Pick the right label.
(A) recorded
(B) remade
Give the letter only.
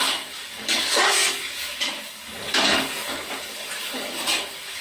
B